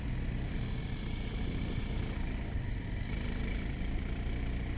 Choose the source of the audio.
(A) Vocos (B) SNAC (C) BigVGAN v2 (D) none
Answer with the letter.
D